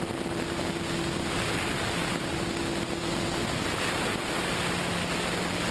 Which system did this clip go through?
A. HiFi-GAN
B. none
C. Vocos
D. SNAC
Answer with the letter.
B